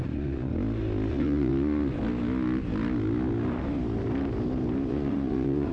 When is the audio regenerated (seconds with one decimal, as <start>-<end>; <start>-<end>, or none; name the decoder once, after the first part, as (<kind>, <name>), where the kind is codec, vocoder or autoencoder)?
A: 0.0-0.5 (vocoder, Vocos); 1.1-1.5; 4.9-5.7